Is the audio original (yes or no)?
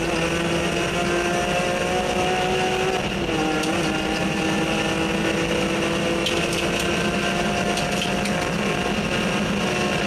yes